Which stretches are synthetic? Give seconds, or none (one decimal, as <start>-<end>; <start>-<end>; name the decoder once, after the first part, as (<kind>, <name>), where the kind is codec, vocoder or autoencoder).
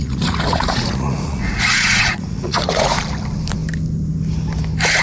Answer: 0.0-3.0 (vocoder, Vocos)